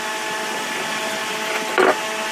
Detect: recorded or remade recorded